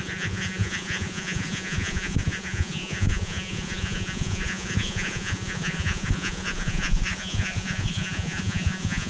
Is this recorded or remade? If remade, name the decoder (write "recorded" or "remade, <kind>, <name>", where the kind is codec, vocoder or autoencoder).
remade, vocoder, Vocos